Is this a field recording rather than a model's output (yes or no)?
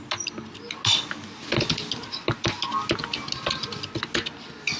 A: yes